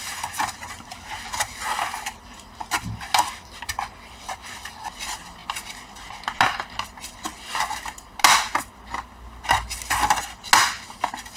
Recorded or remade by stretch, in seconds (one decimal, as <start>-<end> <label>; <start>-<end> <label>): 0.0-11.4 recorded